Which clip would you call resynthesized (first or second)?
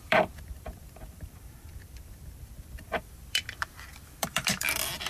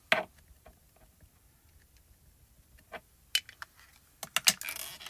first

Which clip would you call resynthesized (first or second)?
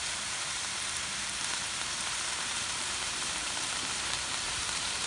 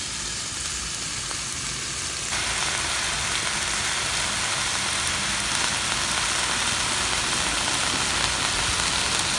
first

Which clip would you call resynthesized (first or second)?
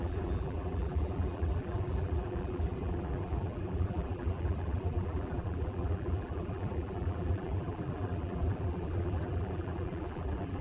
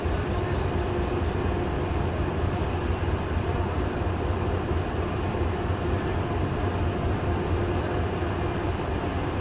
first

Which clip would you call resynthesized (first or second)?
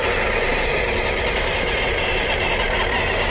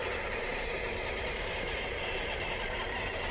second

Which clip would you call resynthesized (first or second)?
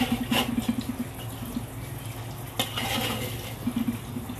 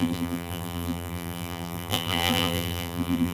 second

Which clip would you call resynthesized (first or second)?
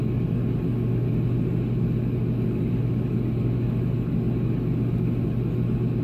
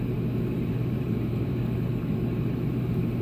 second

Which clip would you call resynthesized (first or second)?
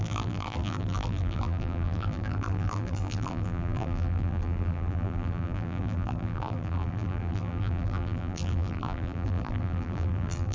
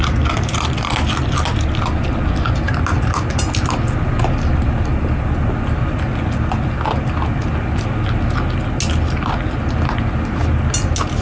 first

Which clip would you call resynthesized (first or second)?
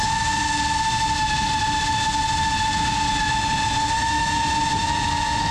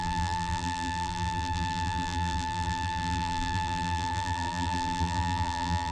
second